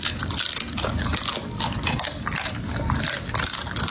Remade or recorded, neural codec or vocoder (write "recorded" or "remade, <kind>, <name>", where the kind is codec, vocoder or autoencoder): recorded